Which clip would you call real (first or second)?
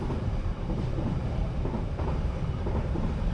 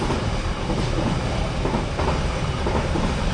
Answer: second